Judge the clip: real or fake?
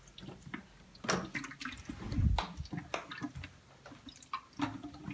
real